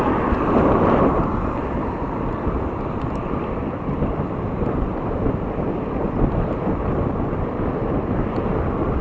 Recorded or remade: remade